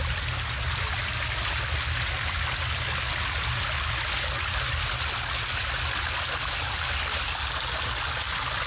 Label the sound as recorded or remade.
recorded